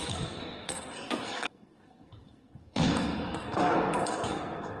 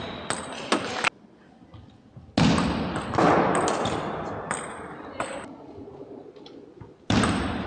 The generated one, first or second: first